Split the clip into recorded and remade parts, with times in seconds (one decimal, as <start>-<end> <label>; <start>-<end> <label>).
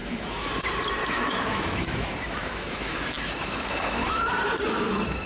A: 0.0-0.5 remade; 0.5-1.0 recorded; 1.0-4.2 remade; 4.2-5.3 recorded